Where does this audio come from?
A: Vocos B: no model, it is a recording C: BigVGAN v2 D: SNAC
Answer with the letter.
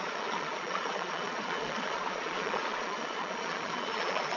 A